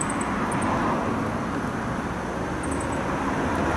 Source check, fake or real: real